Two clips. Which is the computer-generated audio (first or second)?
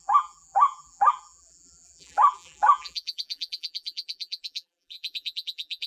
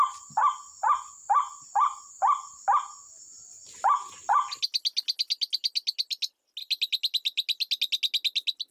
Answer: first